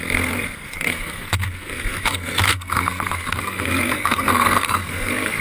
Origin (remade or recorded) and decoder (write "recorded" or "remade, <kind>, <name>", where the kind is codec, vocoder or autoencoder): remade, codec, SNAC